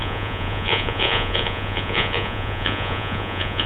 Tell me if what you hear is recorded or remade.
remade